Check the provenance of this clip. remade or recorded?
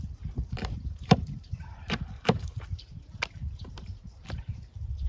remade